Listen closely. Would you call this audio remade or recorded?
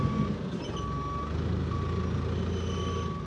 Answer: recorded